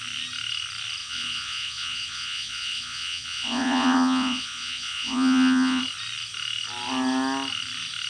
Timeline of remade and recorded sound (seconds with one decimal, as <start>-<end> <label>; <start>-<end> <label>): 0.0-1.0 recorded; 1.0-5.8 remade; 5.8-8.1 recorded